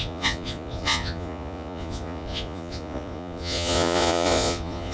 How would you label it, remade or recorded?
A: remade